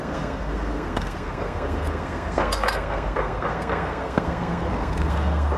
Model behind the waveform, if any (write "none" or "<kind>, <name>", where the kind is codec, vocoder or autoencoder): codec, SNAC